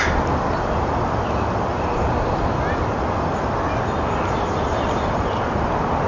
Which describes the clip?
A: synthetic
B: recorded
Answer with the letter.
B